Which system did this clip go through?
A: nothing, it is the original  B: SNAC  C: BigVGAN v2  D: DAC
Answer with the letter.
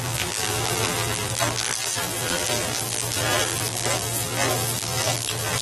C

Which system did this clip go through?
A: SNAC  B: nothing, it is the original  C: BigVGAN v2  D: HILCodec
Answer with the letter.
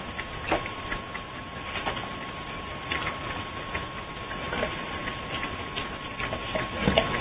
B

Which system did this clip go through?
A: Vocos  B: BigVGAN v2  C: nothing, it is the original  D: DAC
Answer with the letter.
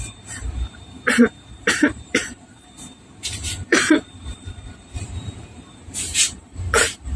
B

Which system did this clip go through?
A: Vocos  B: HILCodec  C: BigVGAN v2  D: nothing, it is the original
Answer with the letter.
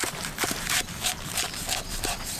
C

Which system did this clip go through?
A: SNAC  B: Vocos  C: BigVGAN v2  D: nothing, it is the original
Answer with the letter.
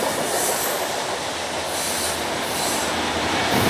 D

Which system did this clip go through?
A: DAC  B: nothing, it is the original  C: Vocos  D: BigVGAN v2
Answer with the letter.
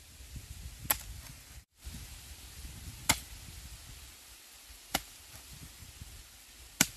B